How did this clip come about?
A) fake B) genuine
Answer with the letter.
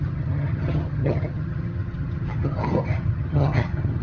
A